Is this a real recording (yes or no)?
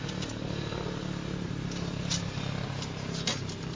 yes